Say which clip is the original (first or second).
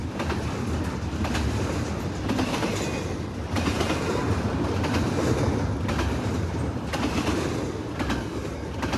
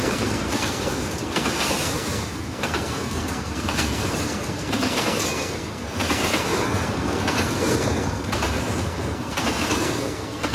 first